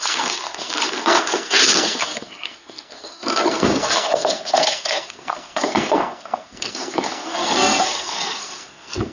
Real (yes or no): no